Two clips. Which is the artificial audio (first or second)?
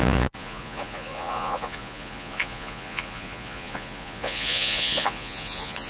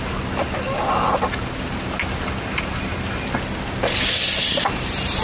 first